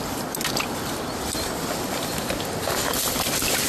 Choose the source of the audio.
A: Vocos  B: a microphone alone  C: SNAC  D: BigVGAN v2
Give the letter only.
B